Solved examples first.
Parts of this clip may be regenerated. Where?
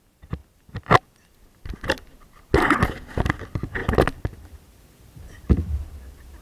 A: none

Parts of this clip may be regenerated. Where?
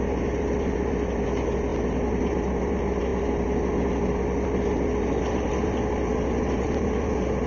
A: none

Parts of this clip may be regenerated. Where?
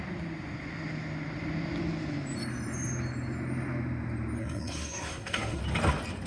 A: 4.4-5.6 (codec, SNAC)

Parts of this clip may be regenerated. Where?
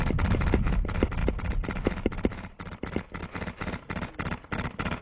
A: none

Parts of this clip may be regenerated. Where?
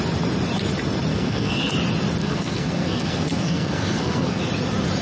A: 1.1-1.7 (codec, SNAC); 2.2-4.4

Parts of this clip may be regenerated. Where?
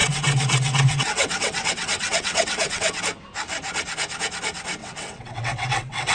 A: 0.0-3.0 (vocoder, WaveNeXt); 4.8-6.1